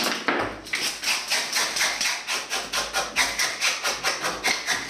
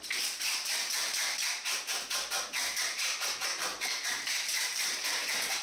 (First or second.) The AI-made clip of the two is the second